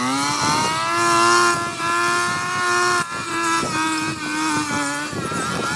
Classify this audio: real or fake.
real